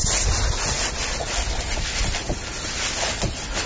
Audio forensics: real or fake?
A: real